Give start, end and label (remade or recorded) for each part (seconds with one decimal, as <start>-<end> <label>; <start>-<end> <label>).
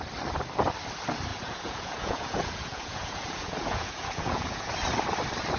0.0-1.3 recorded; 1.3-4.7 remade; 4.7-5.6 recorded